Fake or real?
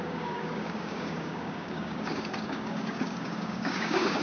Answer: fake